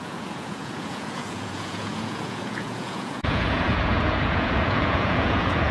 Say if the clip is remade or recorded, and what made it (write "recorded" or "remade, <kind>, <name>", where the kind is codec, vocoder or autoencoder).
remade, vocoder, Vocos